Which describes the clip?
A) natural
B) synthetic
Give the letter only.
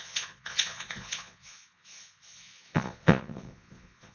B